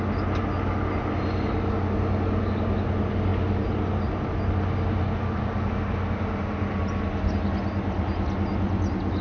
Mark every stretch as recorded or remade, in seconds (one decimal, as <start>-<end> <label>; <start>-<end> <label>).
0.0-9.2 recorded